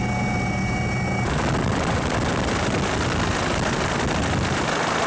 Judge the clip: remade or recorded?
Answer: recorded